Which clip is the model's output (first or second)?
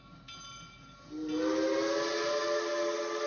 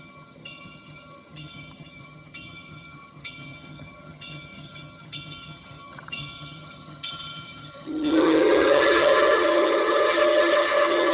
second